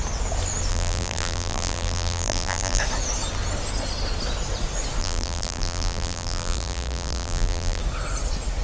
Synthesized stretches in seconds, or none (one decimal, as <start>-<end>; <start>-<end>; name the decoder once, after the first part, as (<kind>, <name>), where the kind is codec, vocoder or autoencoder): 0.7-2.8 (vocoder, BigVGAN v2); 5.0-7.8